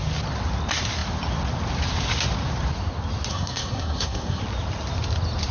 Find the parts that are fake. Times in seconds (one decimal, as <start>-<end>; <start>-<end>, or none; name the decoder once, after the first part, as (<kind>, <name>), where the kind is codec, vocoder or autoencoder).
3.3-4.4 (codec, SNAC)